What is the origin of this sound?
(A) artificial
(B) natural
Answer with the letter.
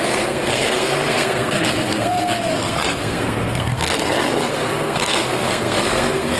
A